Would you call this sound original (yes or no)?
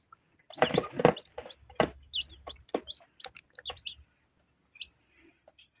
yes